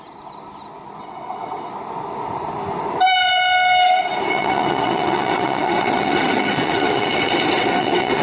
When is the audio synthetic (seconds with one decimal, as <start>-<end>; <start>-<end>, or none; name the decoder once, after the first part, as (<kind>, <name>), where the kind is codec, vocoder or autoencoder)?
1.0-1.7 (vocoder, WaveNeXt); 4.3-8.2